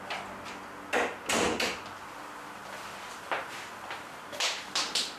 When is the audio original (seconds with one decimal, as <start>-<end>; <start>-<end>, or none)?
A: 0.0-5.2